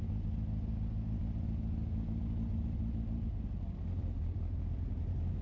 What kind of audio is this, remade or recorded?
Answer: recorded